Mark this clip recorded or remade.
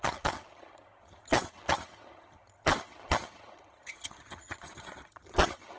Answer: remade